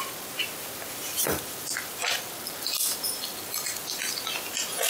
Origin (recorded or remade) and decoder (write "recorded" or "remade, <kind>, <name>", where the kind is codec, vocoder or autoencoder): remade, vocoder, BigVGAN v2